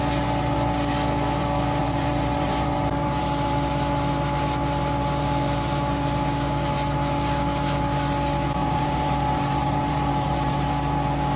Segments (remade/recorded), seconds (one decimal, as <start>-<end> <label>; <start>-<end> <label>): 0.0-1.8 recorded; 1.8-3.2 remade; 3.2-8.6 recorded; 8.6-10.7 remade; 10.7-11.4 recorded

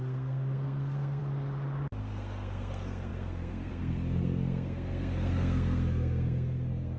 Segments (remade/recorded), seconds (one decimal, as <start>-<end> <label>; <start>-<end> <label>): 0.0-1.2 remade; 1.2-2.0 recorded; 2.0-7.0 remade

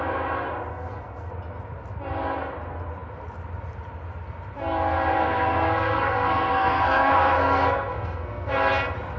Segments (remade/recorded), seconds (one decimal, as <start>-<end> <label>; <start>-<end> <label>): 0.0-0.7 recorded; 0.7-1.3 remade; 1.3-5.2 recorded; 5.2-8.5 remade; 8.5-9.2 recorded